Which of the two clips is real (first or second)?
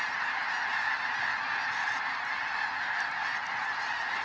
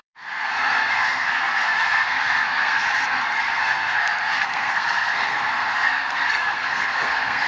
first